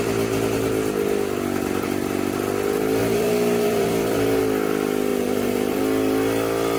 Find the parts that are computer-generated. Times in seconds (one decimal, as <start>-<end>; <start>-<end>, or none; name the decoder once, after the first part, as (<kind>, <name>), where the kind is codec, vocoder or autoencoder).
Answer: 3.0-4.4 (vocoder, BigVGAN v2); 5.1-5.8